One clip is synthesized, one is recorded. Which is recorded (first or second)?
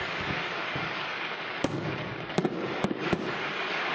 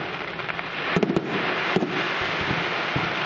second